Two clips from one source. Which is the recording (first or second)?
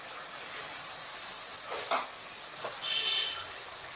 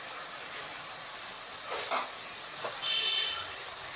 first